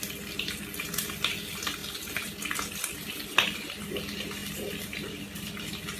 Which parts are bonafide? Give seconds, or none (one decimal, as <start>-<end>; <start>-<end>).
0.0-6.0